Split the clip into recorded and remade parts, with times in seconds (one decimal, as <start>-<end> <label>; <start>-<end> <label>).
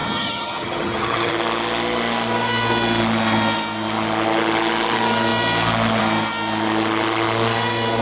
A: 0.0-1.3 remade; 1.3-8.0 recorded